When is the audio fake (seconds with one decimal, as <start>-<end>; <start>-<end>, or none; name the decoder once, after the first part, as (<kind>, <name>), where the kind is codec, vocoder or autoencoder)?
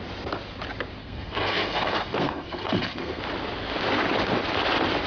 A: 1.0-3.2 (codec, SNAC)